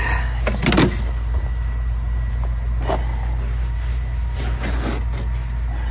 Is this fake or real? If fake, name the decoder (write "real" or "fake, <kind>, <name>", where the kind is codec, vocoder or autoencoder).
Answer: real